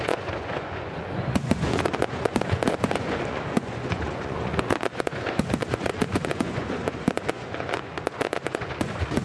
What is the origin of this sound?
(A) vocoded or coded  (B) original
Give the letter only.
A